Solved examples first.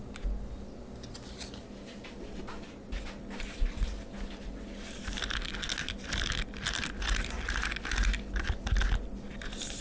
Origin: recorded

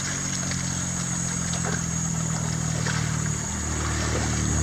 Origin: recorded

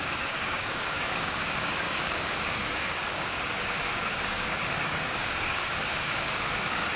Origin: remade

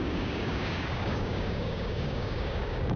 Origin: remade